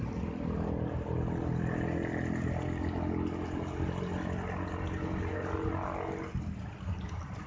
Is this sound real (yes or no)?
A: yes